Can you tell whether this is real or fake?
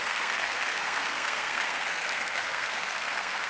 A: fake